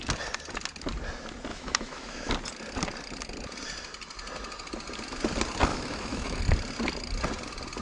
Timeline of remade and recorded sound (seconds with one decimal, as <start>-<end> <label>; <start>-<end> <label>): 0.0-1.5 recorded; 1.5-2.3 remade; 2.3-5.7 recorded; 5.7-6.4 remade; 6.4-7.8 recorded